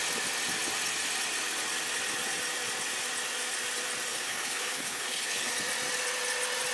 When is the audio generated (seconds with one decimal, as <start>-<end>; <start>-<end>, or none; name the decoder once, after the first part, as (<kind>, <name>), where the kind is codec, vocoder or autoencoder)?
4.1-5.5 (codec, HILCodec)